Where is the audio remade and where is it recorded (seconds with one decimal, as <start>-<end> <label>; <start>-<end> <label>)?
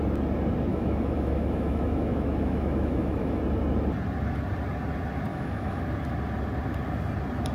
0.0-0.7 recorded; 0.7-3.4 remade; 3.4-5.3 recorded; 5.3-5.8 remade; 5.8-7.5 recorded